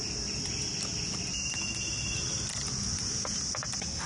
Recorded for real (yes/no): yes